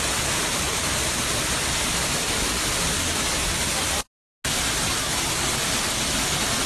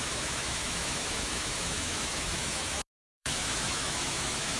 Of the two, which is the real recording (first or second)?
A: first